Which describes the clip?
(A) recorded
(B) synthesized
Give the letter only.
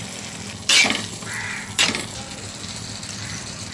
A